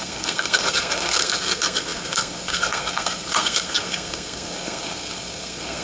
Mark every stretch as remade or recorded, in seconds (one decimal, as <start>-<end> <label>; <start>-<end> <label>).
0.0-5.8 remade